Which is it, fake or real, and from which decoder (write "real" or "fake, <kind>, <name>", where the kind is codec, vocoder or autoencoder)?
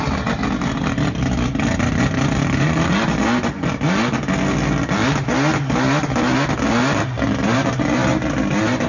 real